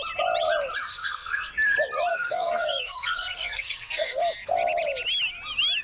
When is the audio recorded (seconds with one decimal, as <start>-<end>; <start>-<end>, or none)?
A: 0.0-0.9; 1.5-2.1; 4.2-5.8